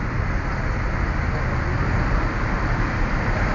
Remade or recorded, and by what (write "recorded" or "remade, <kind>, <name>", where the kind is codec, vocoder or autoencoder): recorded